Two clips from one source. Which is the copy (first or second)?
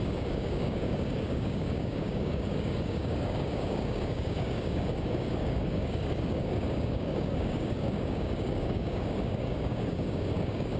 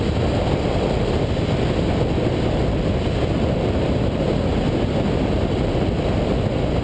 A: first